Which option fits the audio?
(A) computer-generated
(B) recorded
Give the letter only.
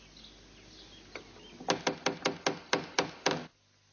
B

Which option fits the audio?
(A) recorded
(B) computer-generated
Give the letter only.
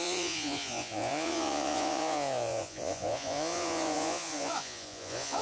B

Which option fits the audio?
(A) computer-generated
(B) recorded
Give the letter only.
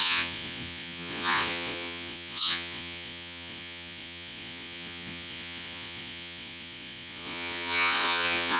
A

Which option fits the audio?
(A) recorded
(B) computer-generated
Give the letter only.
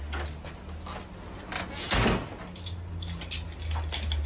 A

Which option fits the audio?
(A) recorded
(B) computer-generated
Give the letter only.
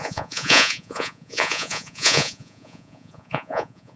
B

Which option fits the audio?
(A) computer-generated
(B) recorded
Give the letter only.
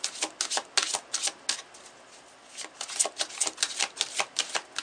B